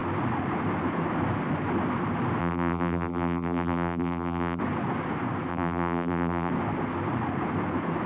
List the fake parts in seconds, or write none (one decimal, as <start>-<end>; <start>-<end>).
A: 2.4-4.6; 5.5-6.5